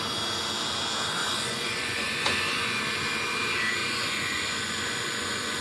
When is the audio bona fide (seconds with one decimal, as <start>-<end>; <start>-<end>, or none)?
0.0-1.2; 2.8-3.8